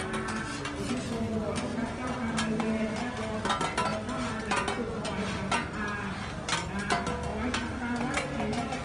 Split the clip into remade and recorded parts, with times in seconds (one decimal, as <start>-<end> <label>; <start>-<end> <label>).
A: 0.0-8.8 recorded